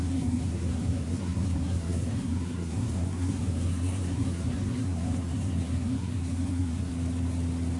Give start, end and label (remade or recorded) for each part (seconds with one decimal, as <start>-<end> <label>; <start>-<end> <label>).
0.0-6.9 remade; 6.9-7.8 recorded